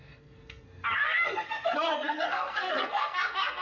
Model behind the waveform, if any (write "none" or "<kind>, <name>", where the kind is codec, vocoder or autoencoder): codec, SNAC